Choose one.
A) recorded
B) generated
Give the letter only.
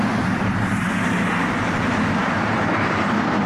A